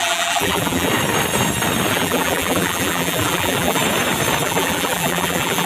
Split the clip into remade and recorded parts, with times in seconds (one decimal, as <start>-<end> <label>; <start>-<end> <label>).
0.0-0.9 remade; 0.9-1.9 recorded; 1.9-3.8 remade; 3.8-4.4 recorded; 4.4-5.7 remade